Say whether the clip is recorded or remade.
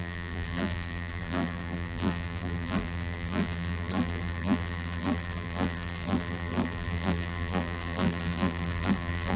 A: remade